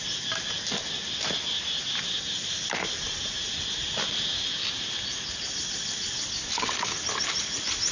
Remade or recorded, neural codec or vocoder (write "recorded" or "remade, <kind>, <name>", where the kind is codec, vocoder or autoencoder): recorded